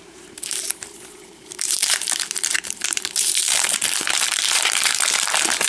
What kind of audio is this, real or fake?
fake